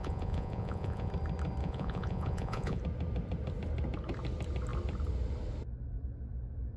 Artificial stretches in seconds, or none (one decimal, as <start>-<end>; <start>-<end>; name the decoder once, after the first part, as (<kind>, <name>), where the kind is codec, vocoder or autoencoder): 0.0-1.1 (vocoder, Vocos); 1.6-2.8